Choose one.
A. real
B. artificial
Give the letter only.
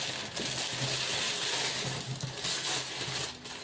A